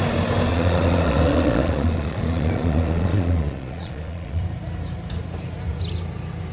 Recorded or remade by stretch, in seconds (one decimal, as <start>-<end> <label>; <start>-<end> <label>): 0.0-0.5 recorded; 0.5-4.4 remade; 4.4-6.5 recorded